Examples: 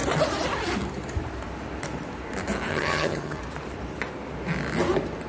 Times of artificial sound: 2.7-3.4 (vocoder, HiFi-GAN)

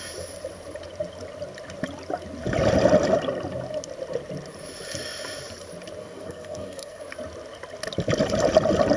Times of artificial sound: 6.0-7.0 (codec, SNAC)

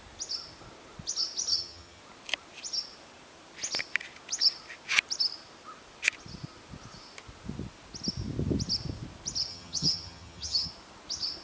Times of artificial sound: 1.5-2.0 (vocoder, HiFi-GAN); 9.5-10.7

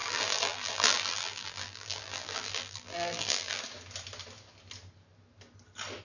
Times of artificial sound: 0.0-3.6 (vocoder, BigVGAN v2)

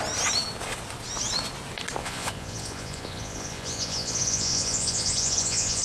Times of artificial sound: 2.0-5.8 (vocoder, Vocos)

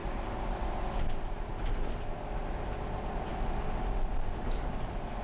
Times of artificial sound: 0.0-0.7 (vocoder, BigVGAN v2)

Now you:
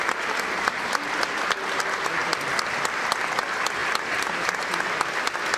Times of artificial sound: 2.2-3.2 (vocoder, BigVGAN v2); 3.8-4.7

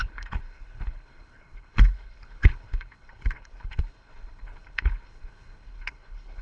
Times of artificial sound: 0.0-6.4 (codec, HILCodec)